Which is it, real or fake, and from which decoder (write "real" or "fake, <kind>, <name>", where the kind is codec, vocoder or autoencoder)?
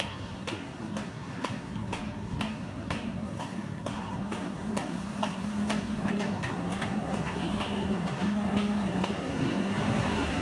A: fake, codec, SNAC